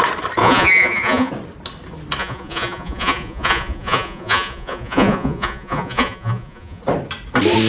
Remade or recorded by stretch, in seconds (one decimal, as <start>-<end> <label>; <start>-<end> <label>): 0.0-0.4 recorded; 0.4-1.3 remade; 1.3-2.2 recorded; 2.2-6.8 remade; 6.8-7.7 recorded